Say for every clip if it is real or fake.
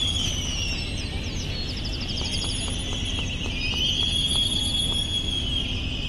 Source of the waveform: real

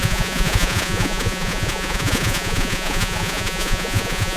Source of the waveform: fake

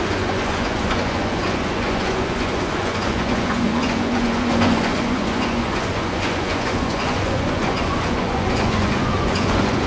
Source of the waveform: fake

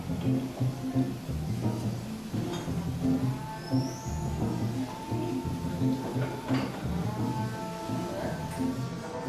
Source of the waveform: real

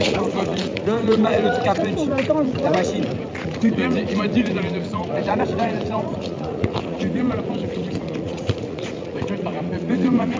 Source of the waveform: fake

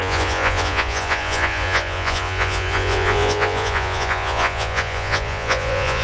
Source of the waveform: fake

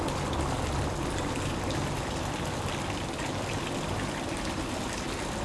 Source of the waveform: real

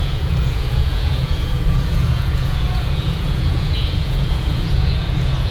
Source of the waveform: fake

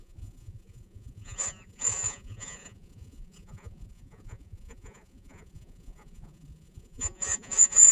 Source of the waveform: fake